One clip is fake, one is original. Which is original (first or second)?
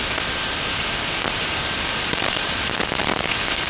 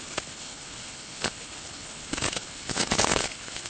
first